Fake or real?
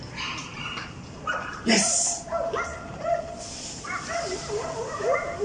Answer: real